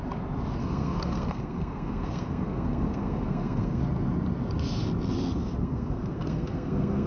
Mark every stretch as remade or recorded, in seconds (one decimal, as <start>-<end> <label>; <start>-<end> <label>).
0.0-0.6 recorded; 0.6-3.8 remade; 3.8-5.6 recorded; 5.6-7.1 remade